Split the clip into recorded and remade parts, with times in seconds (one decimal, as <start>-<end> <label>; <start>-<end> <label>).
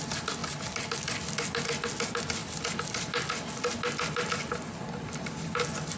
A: 0.0-6.0 recorded